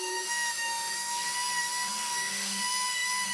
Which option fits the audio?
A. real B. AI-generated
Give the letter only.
B